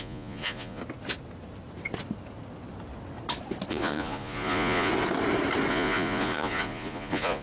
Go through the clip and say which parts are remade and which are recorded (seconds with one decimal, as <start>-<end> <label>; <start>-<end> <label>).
0.0-0.8 remade; 0.8-3.7 recorded; 3.7-4.9 remade; 4.9-5.7 recorded; 5.7-7.4 remade